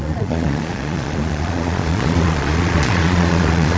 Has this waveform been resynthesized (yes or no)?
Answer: yes